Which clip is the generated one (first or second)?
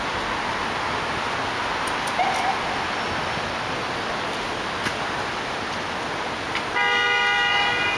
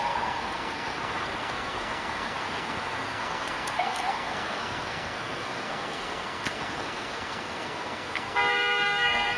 second